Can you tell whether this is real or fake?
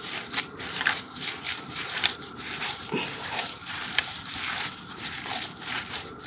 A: fake